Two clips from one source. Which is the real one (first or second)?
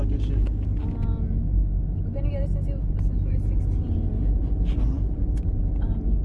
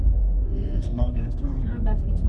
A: first